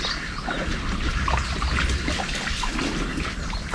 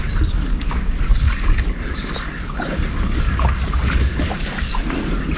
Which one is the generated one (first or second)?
second